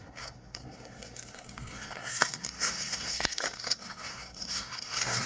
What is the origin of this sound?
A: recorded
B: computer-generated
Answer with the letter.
B